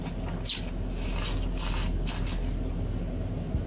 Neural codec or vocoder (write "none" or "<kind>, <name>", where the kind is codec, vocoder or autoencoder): none